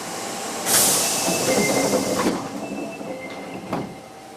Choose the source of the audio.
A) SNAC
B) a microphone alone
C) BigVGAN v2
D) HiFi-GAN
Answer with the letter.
C